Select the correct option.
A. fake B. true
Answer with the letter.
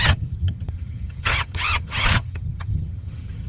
A